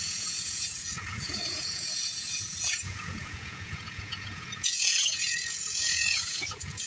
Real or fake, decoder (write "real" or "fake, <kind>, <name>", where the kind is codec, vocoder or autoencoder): fake, vocoder, Vocos